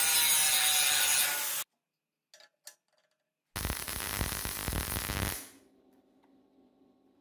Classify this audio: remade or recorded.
recorded